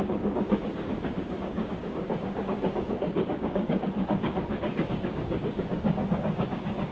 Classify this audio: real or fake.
fake